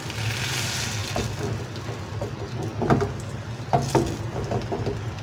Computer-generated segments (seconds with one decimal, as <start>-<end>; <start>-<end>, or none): none